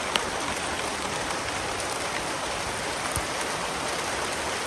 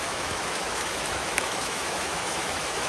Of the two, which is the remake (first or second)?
second